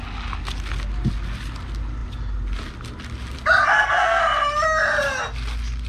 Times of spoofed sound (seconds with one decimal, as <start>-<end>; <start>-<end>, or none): 3.7-4.2